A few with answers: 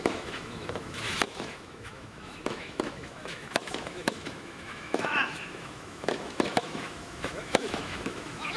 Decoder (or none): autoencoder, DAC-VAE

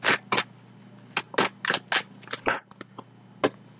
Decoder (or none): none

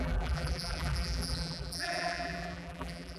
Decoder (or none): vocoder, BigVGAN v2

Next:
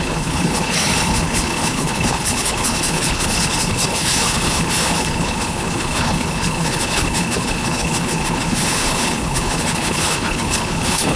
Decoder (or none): codec, HILCodec